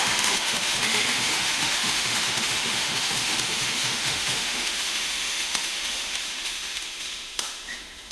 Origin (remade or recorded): remade